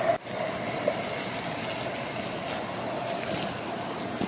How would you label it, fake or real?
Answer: real